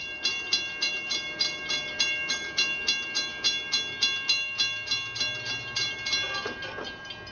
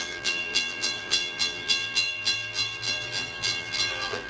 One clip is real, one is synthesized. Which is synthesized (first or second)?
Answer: second